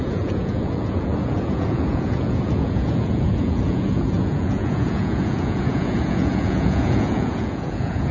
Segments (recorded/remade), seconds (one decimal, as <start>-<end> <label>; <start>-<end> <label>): 0.0-8.1 remade